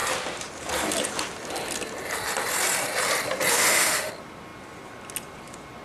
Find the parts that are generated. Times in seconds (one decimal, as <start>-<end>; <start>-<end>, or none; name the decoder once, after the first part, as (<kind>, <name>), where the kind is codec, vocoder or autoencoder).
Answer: 3.5-4.1 (autoencoder, DAC-VAE)